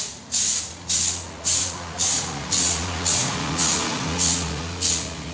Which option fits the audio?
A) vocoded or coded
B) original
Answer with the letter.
A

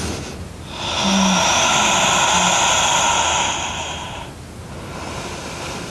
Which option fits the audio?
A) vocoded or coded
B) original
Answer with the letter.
B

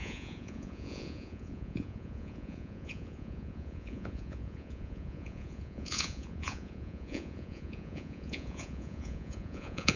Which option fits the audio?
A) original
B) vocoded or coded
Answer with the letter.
B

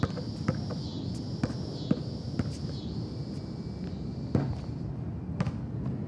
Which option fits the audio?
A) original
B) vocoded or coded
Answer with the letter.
A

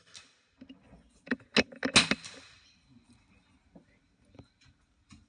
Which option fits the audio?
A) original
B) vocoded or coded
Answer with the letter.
A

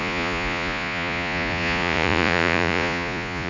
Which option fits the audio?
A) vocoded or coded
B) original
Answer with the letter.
A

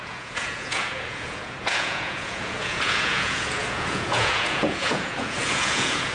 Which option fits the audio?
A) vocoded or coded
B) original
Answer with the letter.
A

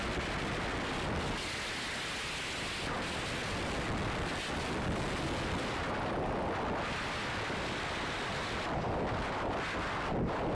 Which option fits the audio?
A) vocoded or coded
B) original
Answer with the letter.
B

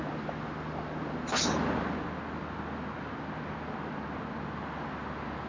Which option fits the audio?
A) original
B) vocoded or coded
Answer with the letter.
A